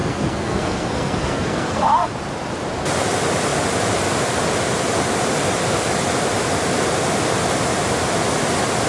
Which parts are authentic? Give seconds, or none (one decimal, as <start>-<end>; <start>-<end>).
2.1-8.9